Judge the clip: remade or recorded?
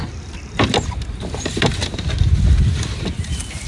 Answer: recorded